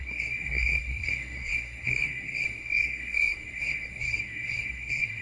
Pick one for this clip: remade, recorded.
remade